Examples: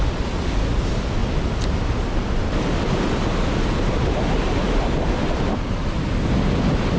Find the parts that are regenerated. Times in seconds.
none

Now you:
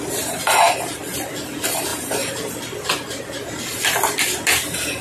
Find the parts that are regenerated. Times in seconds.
none

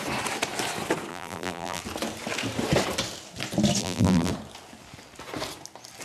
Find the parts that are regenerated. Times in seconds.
1.1-1.8 (vocoder, BigVGAN v2); 3.8-4.3